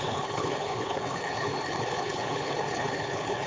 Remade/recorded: remade